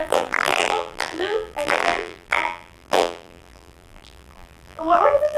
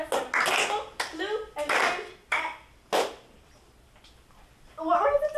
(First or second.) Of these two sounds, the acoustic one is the second